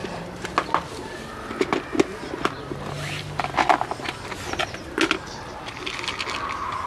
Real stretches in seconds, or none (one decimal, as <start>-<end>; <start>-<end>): 0.0-6.9